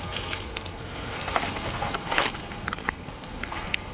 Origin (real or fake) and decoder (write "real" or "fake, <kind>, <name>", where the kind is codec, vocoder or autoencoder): fake, codec, SNAC